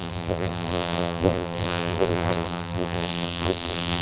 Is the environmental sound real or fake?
fake